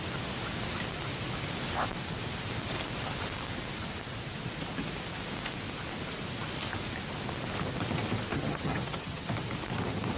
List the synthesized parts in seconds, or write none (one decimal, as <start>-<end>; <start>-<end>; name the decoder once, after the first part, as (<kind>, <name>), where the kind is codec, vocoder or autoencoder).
8.3-9.3 (vocoder, HiFi-GAN)